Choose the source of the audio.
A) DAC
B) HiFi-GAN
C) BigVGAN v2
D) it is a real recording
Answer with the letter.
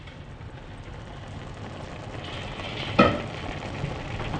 D